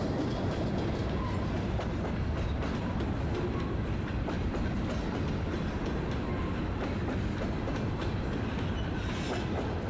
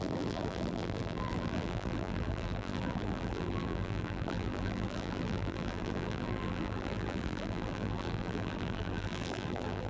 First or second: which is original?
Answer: first